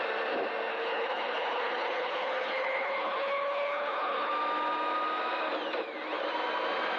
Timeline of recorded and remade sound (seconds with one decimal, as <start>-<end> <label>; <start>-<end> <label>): 0.0-0.7 recorded; 0.7-4.3 remade; 4.3-7.0 recorded